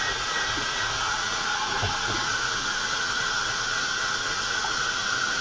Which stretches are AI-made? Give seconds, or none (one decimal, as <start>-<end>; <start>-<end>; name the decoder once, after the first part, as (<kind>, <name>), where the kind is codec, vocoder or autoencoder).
0.0-5.4 (vocoder, Vocos)